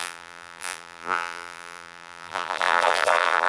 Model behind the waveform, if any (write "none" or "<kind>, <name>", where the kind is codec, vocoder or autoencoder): vocoder, BigVGAN v2